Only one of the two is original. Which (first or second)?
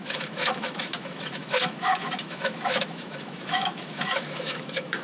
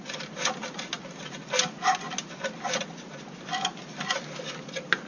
second